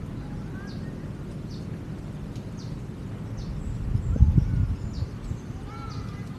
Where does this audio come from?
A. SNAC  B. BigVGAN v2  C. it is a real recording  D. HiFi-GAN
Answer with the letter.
C